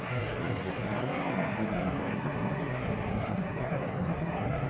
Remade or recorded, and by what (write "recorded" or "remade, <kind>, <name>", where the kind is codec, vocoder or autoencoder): remade, codec, SNAC